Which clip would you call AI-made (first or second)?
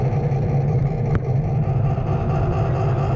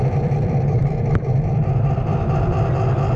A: second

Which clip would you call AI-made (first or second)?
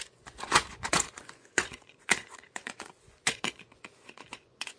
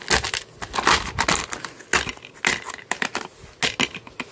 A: first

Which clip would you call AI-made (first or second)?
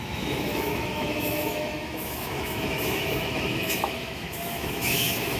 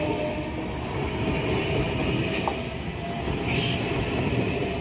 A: first